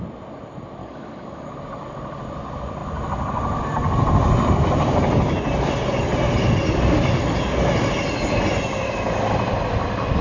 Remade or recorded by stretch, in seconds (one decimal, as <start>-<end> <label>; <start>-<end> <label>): 0.0-0.8 recorded; 0.8-1.5 remade; 1.5-10.2 recorded

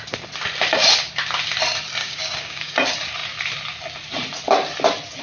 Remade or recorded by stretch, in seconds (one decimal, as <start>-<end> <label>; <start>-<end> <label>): 0.0-2.0 recorded; 2.0-2.7 remade; 2.7-5.2 recorded

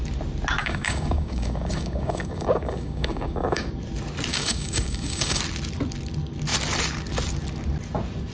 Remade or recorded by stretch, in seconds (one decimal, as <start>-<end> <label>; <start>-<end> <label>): 0.0-0.6 recorded; 0.6-3.7 remade; 3.7-4.3 recorded; 4.3-5.4 remade; 5.4-8.3 recorded

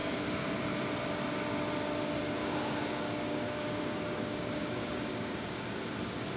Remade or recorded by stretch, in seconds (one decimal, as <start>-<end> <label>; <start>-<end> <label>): 0.0-0.5 remade; 0.5-2.4 recorded; 2.4-5.6 remade; 5.6-6.4 recorded

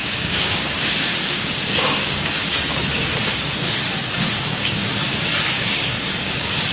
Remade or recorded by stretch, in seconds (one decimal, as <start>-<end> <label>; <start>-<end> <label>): 0.0-2.4 remade; 2.4-4.4 recorded; 4.4-4.9 remade; 4.9-5.4 recorded; 5.4-6.7 remade

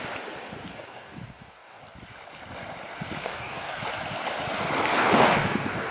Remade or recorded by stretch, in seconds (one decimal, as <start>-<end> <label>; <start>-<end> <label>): 0.0-0.7 recorded; 0.7-1.8 remade; 1.8-3.2 recorded; 3.2-3.8 remade; 3.8-5.0 recorded; 5.0-5.9 remade

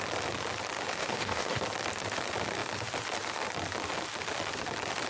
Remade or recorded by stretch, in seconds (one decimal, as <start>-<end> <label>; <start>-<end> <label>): 0.0-1.0 recorded; 1.0-1.6 remade; 1.6-5.1 recorded